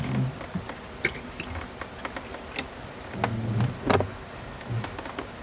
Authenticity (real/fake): real